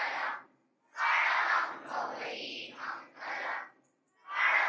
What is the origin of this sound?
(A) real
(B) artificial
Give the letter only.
A